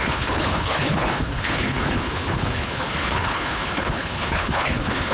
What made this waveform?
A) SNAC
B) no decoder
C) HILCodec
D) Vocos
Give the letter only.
C